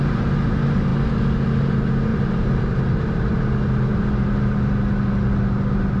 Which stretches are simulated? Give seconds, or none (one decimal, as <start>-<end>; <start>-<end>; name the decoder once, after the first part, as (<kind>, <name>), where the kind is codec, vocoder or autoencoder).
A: 2.1-3.3 (vocoder, BigVGAN v2)